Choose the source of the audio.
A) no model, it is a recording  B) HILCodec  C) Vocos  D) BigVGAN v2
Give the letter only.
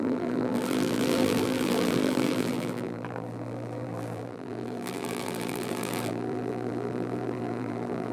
D